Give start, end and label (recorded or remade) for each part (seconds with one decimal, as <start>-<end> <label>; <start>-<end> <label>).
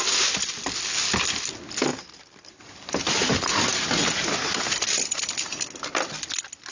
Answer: 0.0-6.7 recorded